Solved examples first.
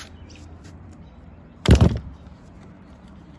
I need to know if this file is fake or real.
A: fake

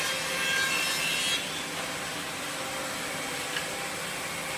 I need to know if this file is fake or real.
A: real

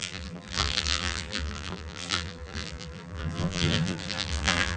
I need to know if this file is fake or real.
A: fake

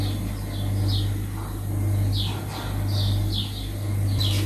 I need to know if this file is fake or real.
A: real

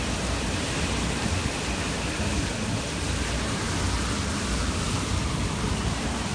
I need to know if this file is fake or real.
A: real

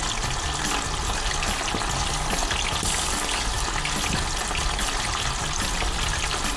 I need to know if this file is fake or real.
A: real